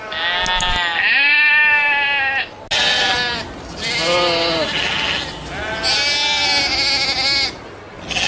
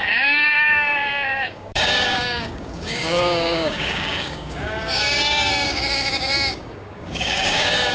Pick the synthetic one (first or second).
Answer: second